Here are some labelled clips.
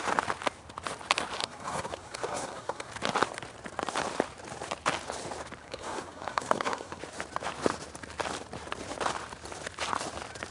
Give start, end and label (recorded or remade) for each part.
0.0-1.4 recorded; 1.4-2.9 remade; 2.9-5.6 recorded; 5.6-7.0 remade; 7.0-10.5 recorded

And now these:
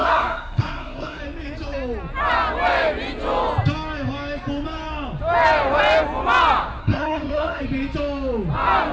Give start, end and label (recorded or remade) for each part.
0.0-1.2 remade; 1.2-6.8 recorded; 6.8-7.6 remade; 7.6-8.9 recorded

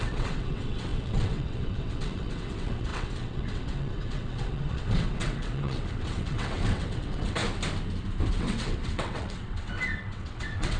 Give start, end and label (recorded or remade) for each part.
0.0-7.4 remade; 7.4-8.3 recorded; 8.3-10.8 remade

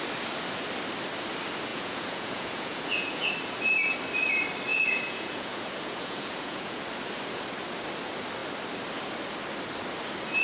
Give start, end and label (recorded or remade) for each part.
0.0-1.7 recorded; 1.7-3.3 remade; 3.3-4.7 recorded; 4.7-6.8 remade; 6.8-10.4 recorded

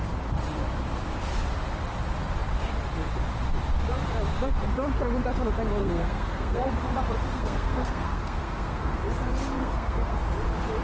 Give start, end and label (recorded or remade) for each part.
0.0-5.8 recorded; 5.8-6.8 remade; 6.8-7.3 recorded; 7.3-9.0 remade; 9.0-9.6 recorded; 9.6-10.2 remade; 10.2-10.8 recorded

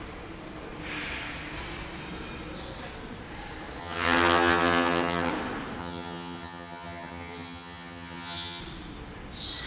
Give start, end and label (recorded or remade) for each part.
0.0-3.8 recorded; 3.8-5.3 remade; 5.3-5.8 recorded; 5.8-8.6 remade; 8.6-9.7 recorded

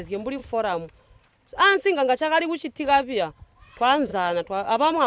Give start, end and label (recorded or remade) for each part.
0.0-5.1 recorded

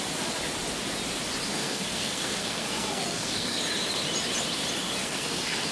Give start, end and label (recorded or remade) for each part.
0.0-1.5 recorded; 1.5-3.6 remade; 3.6-5.0 recorded; 5.0-5.7 remade